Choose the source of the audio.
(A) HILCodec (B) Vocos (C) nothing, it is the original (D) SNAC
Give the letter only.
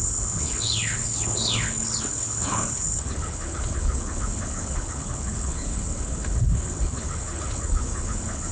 A